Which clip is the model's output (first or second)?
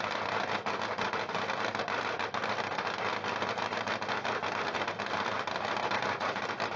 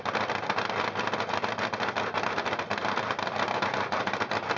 second